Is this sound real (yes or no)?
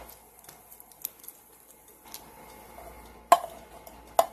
yes